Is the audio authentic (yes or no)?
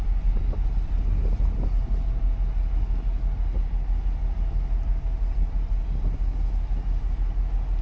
yes